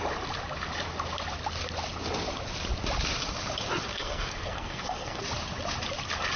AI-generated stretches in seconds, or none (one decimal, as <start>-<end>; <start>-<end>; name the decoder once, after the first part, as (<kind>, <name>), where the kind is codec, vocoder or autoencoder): 3.9-5.2 (codec, SNAC)